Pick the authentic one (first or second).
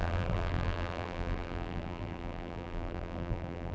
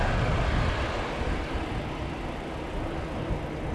second